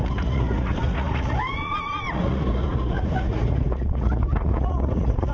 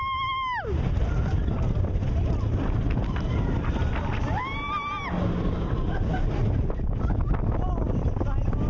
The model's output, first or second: first